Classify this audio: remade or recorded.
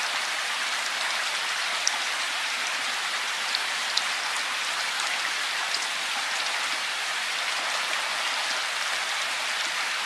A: recorded